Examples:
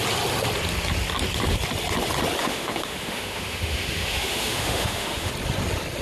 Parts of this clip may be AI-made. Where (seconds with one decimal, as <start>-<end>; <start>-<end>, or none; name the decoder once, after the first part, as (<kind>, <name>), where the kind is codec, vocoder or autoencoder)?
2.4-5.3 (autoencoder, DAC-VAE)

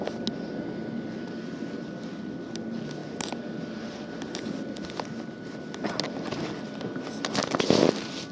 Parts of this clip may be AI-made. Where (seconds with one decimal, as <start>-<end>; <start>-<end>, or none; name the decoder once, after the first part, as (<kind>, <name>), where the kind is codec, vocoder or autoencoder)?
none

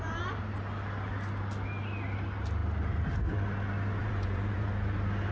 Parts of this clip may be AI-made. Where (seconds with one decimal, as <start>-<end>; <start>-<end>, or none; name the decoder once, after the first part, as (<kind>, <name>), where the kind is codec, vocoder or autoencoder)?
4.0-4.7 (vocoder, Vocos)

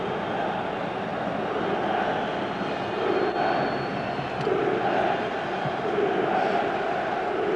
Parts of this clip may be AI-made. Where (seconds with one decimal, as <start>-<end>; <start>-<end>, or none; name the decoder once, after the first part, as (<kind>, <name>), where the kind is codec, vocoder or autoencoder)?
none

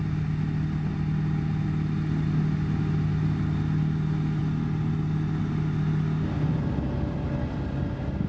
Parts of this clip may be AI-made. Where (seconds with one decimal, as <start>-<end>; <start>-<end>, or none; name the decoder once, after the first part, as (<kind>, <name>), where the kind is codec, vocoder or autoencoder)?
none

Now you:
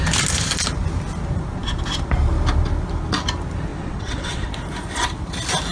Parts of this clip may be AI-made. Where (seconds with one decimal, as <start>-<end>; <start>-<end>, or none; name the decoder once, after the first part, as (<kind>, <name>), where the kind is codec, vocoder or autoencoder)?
3.7-4.5 (vocoder, WaveNeXt)

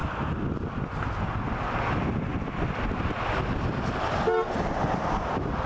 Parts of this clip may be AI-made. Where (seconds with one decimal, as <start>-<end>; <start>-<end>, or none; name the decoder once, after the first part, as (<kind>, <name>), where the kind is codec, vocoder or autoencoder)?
none